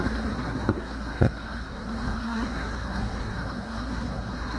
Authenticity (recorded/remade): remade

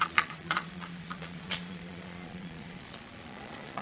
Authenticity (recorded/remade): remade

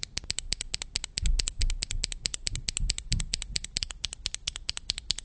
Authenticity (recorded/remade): recorded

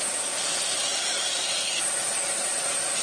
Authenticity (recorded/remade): recorded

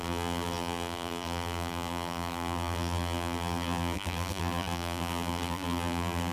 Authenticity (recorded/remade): remade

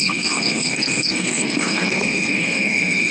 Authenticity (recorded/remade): remade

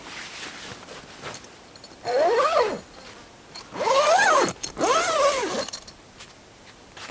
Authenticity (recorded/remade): recorded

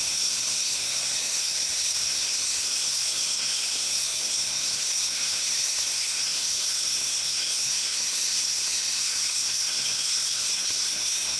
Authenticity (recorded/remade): remade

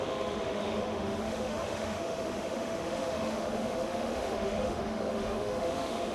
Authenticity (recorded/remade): remade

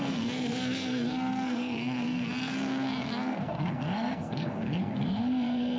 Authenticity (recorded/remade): remade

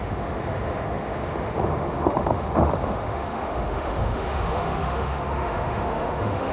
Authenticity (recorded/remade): remade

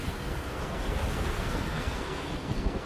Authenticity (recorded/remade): remade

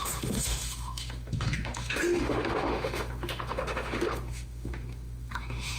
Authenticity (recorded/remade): remade